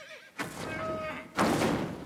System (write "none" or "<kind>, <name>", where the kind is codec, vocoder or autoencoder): none